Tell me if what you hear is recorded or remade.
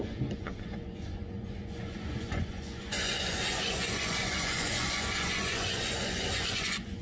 remade